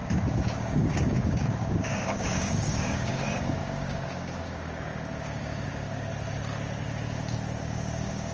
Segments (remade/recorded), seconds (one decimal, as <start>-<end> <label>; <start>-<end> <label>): 0.0-6.1 remade; 6.1-7.6 recorded; 7.6-8.3 remade